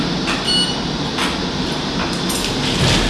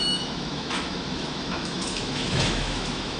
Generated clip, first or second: second